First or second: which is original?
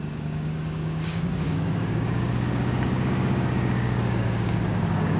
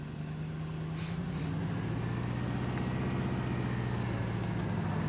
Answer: second